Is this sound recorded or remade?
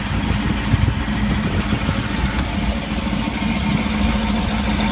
recorded